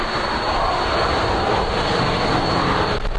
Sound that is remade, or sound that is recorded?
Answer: recorded